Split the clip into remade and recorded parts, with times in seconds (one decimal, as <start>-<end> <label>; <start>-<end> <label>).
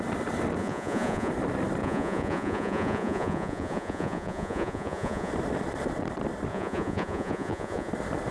0.0-0.6 recorded; 0.6-1.3 remade; 1.3-1.8 recorded; 1.8-5.3 remade; 5.3-6.5 recorded; 6.5-7.9 remade; 7.9-8.3 recorded